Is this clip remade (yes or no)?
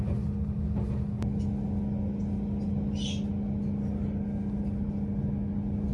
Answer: no